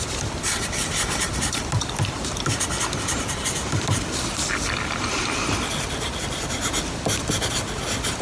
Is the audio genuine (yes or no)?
yes